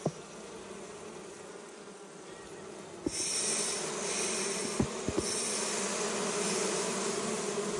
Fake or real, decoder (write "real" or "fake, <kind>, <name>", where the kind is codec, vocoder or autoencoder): real